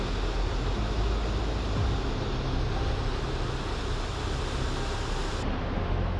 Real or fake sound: real